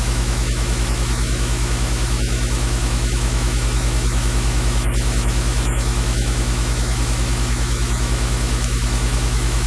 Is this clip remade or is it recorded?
remade